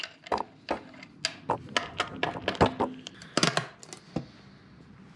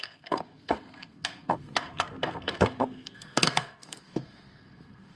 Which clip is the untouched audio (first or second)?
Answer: first